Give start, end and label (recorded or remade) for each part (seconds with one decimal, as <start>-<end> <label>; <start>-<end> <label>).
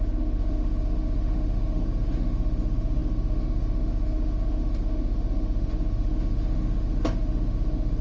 0.0-8.0 remade